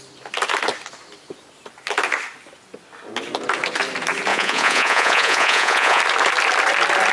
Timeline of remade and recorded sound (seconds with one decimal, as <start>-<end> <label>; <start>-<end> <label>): 0.0-4.3 recorded; 4.3-6.0 remade; 6.0-7.1 recorded